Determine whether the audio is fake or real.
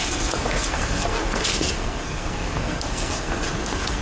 fake